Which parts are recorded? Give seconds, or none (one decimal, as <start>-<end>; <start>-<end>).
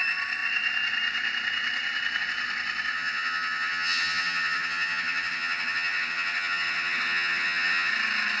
0.0-2.9; 7.9-8.4